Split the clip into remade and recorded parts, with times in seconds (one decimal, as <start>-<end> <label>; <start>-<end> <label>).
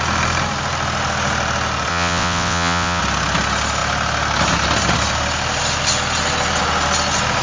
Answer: 0.0-1.9 recorded; 1.9-3.0 remade; 3.0-7.4 recorded